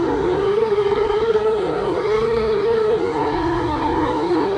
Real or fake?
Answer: fake